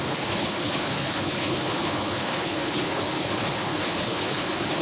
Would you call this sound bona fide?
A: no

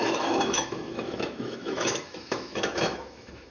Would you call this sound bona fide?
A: no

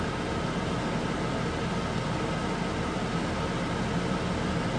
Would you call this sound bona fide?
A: yes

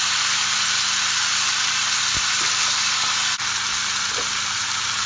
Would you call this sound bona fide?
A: yes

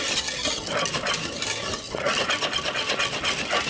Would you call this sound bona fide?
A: yes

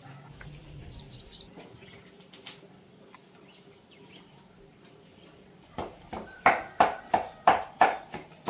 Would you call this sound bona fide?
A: yes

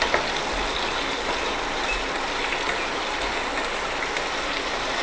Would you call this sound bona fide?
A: yes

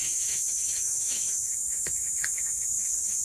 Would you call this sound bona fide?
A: no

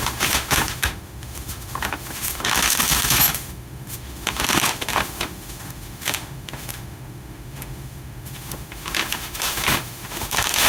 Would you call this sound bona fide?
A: no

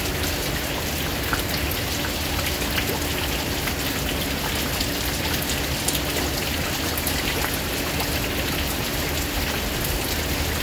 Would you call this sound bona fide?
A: yes